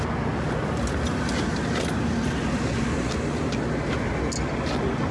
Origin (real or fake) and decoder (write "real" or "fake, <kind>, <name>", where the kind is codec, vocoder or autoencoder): real